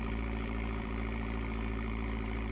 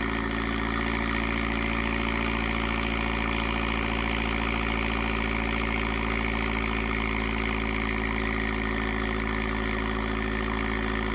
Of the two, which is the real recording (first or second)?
second